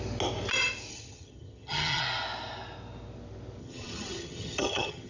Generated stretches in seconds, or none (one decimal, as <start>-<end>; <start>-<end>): 0.9-2.0; 3.6-5.1